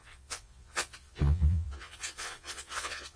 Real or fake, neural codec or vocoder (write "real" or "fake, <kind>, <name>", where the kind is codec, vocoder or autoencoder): fake, vocoder, Vocos